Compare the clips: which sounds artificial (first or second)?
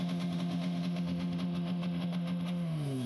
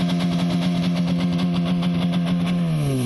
first